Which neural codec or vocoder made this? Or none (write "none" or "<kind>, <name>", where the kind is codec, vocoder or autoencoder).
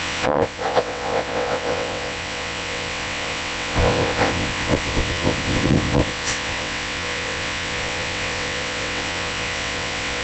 vocoder, WaveNeXt